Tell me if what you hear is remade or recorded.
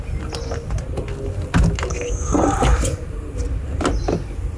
recorded